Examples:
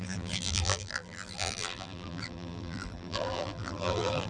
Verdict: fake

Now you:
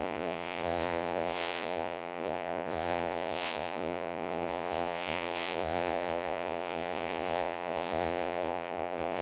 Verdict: fake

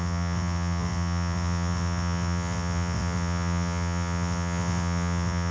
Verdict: fake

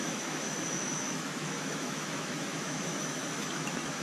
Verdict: fake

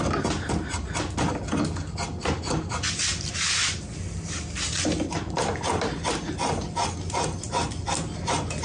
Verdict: real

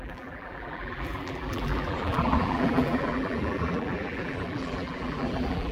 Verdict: fake